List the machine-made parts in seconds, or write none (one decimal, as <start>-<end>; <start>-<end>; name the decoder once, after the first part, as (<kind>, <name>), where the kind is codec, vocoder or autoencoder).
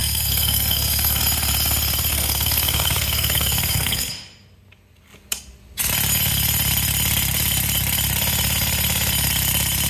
0.0-1.2 (codec, SNAC); 2.1-4.1